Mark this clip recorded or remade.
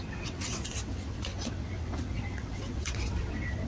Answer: remade